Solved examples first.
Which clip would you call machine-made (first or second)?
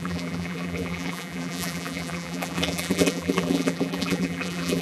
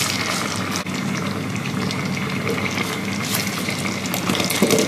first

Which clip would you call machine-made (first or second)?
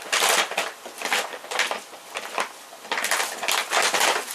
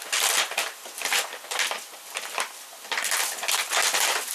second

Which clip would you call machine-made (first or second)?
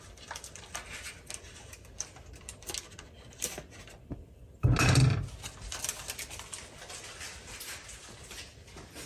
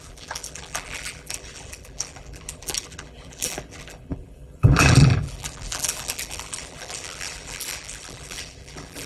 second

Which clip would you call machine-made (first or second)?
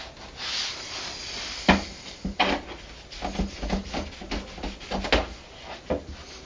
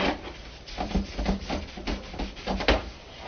second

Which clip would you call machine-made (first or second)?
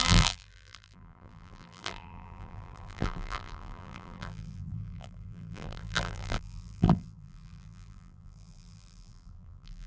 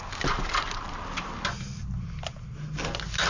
first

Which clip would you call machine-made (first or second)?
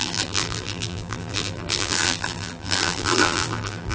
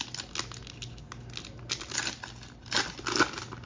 first